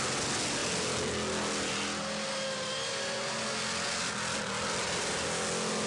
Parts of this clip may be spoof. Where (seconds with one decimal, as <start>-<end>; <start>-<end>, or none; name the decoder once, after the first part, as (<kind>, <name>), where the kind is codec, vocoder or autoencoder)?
none